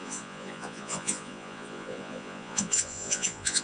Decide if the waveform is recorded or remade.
remade